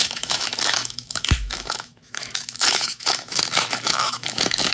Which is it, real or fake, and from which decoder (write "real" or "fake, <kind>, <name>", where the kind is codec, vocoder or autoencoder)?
fake, autoencoder, DAC-VAE